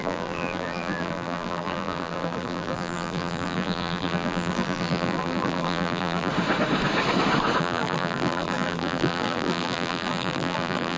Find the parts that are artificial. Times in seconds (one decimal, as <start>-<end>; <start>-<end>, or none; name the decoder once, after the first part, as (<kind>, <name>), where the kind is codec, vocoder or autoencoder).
0.0-6.3 (vocoder, BigVGAN v2); 7.6-11.0